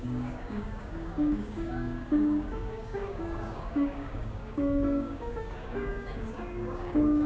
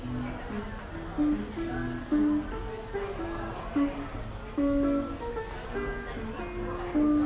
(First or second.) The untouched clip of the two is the second